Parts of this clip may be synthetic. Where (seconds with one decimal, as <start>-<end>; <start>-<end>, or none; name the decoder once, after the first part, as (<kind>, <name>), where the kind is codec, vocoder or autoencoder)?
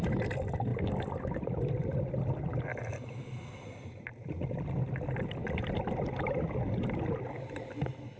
none